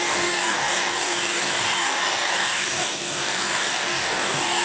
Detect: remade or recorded remade